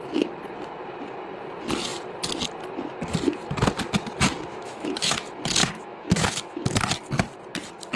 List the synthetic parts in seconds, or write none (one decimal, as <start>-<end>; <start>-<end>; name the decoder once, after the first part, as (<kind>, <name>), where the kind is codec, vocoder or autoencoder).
4.5-5.1 (autoencoder, DAC-VAE); 5.6-6.8